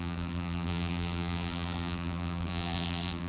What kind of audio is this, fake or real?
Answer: fake